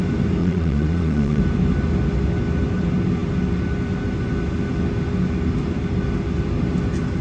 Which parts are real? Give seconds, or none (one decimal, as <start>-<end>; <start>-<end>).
0.0-0.4; 1.4-7.2